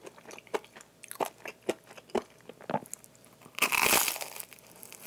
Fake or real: real